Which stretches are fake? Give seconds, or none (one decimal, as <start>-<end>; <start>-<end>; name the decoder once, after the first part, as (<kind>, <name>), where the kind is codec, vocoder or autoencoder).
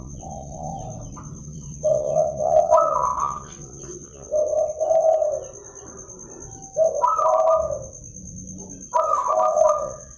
0.0-0.7 (vocoder, WaveNeXt); 1.4-4.3; 9.5-10.2